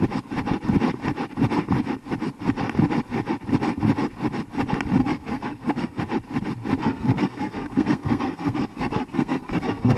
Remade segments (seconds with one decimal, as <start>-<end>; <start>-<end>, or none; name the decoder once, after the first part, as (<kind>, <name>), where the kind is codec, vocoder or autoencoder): 5.0-6.0 (codec, SNAC); 6.8-10.0